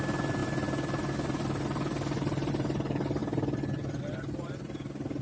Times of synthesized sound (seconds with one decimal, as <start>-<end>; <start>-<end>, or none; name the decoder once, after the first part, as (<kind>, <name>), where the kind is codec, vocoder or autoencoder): none